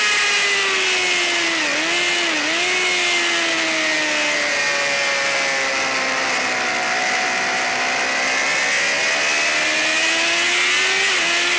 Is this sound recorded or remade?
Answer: recorded